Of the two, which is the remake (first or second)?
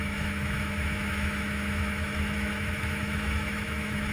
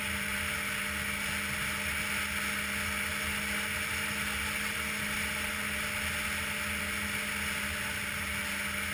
first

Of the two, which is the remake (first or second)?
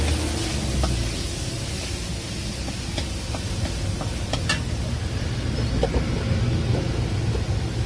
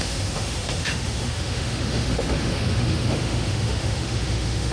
second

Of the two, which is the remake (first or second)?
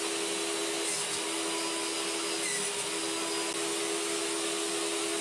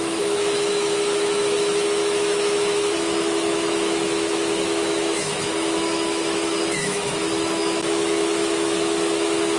second